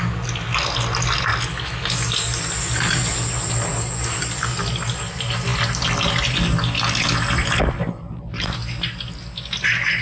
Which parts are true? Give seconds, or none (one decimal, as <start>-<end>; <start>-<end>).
0.0-10.0

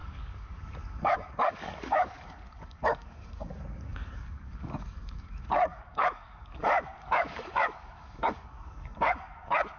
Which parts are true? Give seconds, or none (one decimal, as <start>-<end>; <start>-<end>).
none

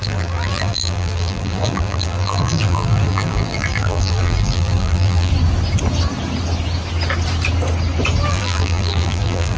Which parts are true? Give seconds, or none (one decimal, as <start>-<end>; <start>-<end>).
5.3-8.3

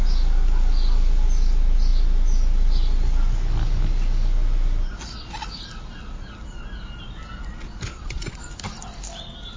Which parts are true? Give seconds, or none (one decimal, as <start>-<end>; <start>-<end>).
0.0-7.9; 8.5-9.6

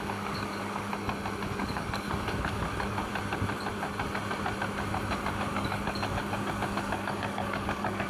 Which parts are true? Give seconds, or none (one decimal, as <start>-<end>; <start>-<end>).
0.9-1.6; 3.1-5.3

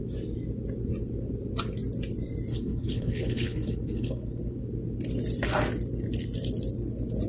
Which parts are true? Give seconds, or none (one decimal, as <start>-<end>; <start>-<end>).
0.0-2.5; 4.6-7.3

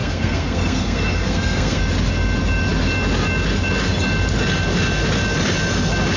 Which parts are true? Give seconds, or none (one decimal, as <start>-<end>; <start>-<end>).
1.8-6.2